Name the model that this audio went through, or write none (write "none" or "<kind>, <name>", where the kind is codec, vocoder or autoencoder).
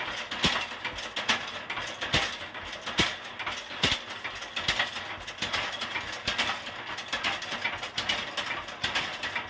none